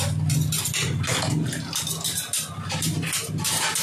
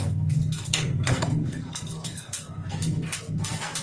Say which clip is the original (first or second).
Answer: first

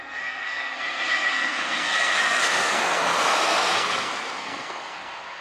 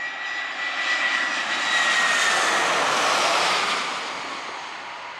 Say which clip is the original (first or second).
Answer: second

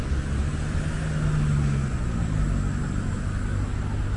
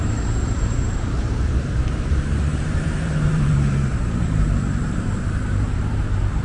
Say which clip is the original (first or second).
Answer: first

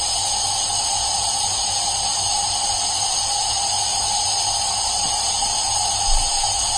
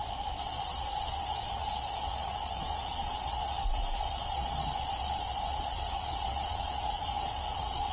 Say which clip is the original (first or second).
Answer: first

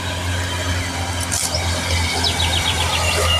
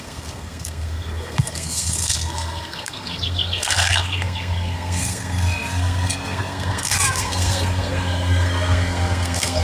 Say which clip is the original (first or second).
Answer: first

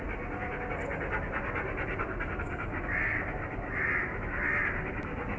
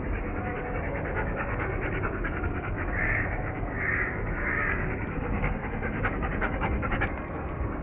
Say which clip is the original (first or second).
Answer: first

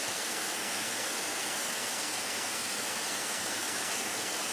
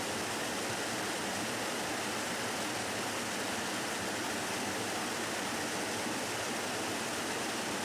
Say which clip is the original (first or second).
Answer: second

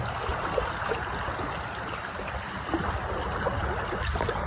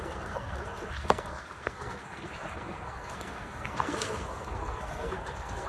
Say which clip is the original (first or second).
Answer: first